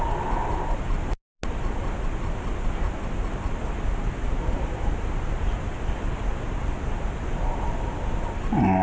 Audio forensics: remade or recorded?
recorded